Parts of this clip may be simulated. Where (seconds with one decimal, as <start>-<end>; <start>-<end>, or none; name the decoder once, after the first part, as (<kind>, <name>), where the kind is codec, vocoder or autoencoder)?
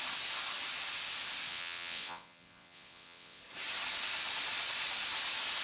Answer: 1.5-3.4 (vocoder, WaveNeXt)